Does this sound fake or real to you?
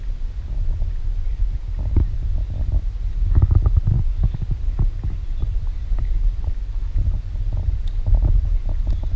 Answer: real